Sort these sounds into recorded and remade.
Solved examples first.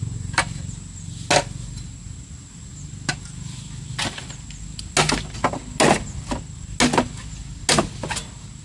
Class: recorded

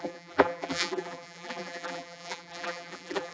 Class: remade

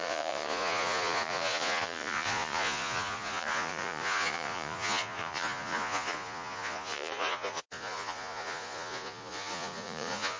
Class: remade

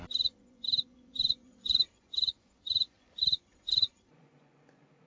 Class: remade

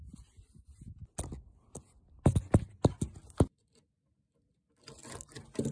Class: recorded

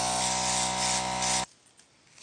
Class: recorded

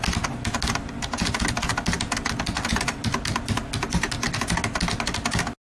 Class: recorded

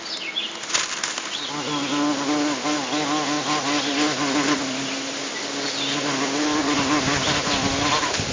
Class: recorded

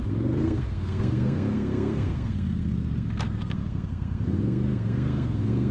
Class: remade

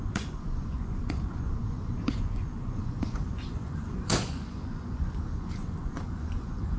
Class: remade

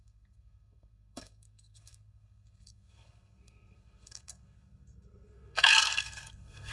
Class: remade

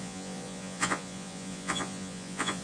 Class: remade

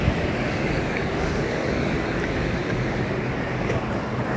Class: remade